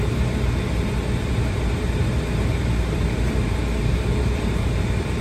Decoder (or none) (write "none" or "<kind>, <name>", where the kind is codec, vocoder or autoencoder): vocoder, BigVGAN v2